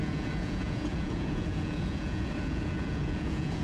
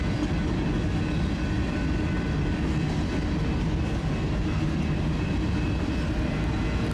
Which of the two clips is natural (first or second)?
second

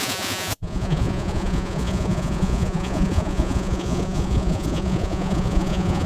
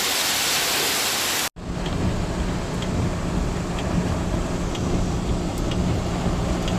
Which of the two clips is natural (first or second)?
second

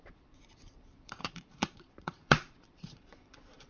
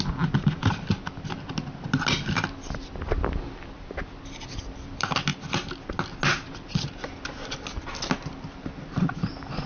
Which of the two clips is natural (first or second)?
second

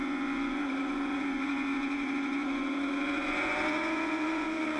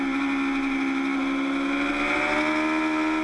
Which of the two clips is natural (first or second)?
second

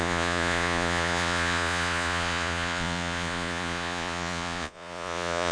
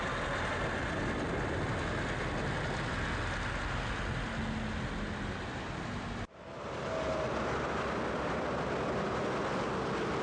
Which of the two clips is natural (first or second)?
second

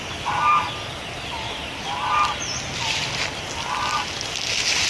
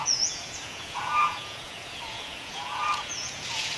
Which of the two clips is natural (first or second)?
first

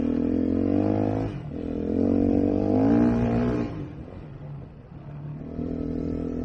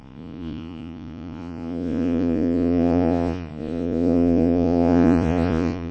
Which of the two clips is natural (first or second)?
first